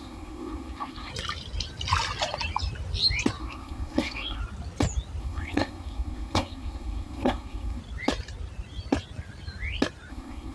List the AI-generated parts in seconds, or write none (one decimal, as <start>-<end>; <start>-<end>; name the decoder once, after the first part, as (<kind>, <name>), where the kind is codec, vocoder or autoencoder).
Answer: 0.0-1.1 (codec, SNAC); 3.4-4.4; 5.2-7.8; 10.1-10.5